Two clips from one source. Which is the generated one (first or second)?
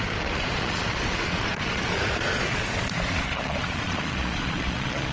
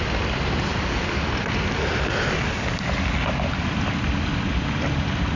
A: first